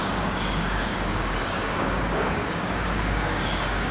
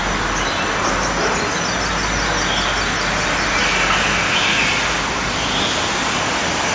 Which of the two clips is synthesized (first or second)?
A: first